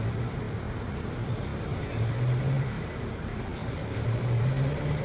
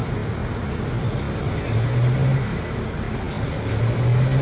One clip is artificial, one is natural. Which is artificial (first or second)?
first